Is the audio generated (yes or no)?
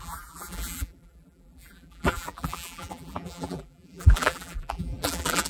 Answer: yes